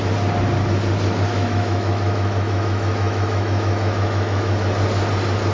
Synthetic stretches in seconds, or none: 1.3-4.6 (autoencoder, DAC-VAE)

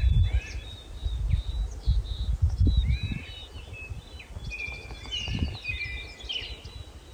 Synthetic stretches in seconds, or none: none

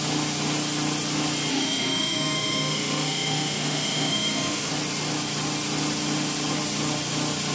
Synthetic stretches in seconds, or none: 1.5-4.7 (autoencoder, DAC-VAE)

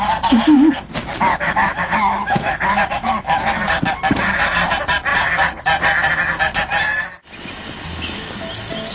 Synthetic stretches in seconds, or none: 1.3-3.6 (autoencoder, DAC-VAE)

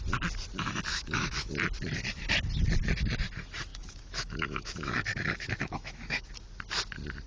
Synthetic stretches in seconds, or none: 0.9-1.5 (autoencoder, DAC-VAE); 3.7-6.3

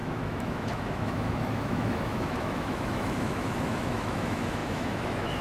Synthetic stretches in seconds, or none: 0.0-5.4 (autoencoder, DAC-VAE)

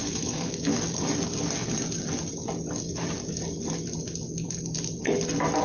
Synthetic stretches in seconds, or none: 0.0-0.8 (autoencoder, DAC-VAE)

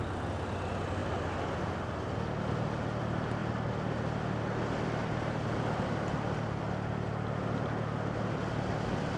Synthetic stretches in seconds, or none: none